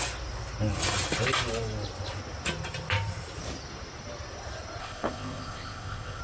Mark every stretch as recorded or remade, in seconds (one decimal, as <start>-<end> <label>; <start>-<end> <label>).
0.0-4.8 recorded; 4.8-6.2 remade